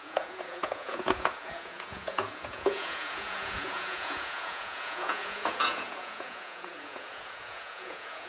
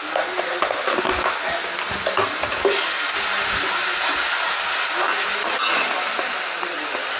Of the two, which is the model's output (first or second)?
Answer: first